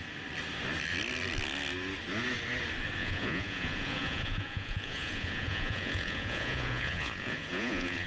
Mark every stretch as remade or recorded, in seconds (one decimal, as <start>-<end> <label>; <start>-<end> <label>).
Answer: 0.0-3.0 recorded; 3.0-8.1 remade